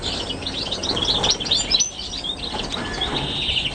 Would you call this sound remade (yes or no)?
no